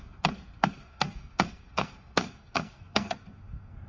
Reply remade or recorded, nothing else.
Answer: remade